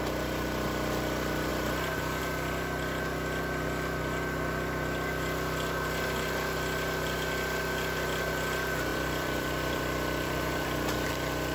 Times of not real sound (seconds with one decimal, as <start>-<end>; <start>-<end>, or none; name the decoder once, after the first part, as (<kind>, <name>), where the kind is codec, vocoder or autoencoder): 8.9-11.1 (vocoder, BigVGAN v2)